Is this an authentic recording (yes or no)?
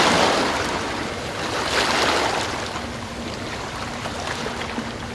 yes